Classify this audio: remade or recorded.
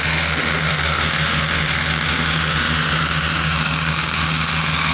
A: remade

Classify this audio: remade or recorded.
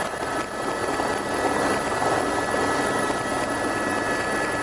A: recorded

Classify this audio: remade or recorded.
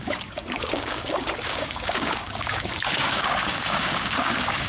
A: remade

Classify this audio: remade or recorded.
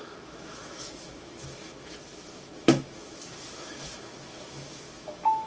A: remade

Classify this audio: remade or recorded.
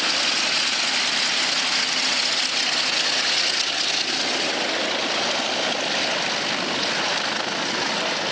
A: recorded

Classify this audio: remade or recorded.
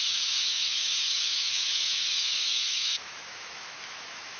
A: remade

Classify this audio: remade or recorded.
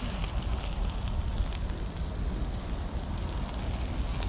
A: recorded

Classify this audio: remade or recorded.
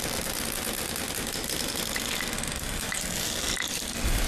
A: recorded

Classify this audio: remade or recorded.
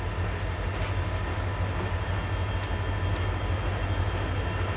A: recorded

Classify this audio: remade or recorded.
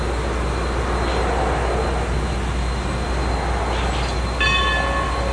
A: recorded